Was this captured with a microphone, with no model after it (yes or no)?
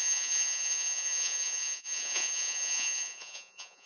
no